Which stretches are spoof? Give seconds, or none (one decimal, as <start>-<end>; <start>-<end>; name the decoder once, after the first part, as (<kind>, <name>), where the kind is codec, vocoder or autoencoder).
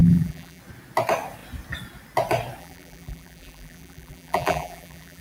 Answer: 0.0-0.6 (vocoder, BigVGAN v2); 2.6-5.2